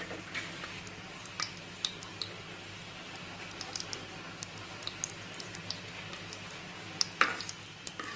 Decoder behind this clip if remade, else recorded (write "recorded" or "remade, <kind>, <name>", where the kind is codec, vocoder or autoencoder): recorded